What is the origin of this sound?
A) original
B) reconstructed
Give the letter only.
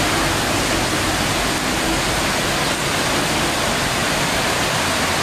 A